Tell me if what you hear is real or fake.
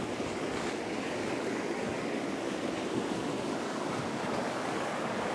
fake